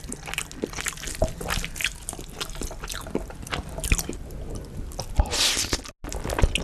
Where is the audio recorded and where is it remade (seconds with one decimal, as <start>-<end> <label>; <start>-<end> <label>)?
0.0-6.6 recorded